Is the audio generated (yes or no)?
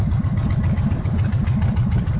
no